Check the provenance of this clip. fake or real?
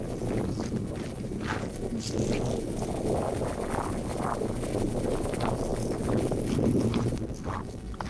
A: real